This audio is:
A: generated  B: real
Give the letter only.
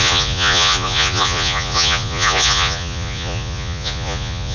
A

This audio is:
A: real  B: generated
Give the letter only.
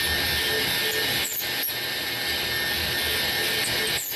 A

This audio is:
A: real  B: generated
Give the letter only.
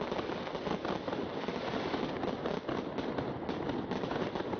A